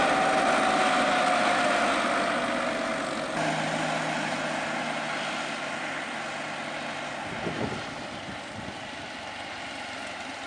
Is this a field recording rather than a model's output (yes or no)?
yes